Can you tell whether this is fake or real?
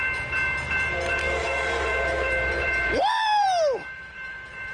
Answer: fake